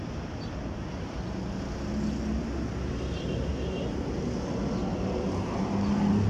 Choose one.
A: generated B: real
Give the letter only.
B